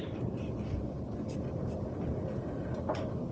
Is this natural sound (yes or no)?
yes